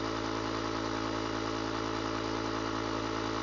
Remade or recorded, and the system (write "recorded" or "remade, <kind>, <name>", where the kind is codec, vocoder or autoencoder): recorded